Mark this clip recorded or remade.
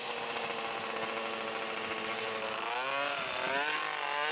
recorded